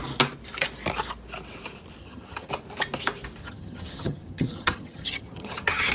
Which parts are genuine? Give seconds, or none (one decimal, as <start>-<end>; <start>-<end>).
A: 0.0-2.0; 2.5-3.4